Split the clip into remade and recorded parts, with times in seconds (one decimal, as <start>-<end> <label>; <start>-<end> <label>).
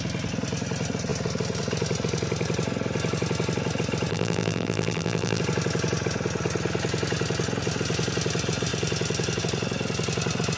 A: 0.0-4.1 recorded; 4.1-5.4 remade; 5.4-10.6 recorded